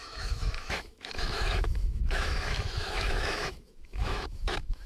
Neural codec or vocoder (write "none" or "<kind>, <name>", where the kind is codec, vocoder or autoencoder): autoencoder, DAC-VAE